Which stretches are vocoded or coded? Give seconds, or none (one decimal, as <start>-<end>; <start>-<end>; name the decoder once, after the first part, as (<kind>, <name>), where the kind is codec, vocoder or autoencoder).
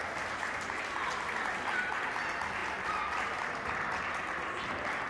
none